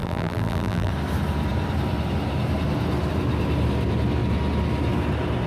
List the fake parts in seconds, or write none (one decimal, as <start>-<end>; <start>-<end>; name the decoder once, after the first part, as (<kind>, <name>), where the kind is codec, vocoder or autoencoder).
0.0-0.9 (vocoder, BigVGAN v2)